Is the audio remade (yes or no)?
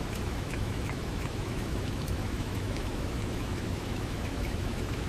yes